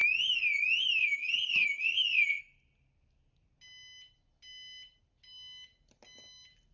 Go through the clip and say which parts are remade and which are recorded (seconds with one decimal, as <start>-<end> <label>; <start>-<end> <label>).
0.0-1.0 recorded; 1.0-2.4 remade; 2.4-6.7 recorded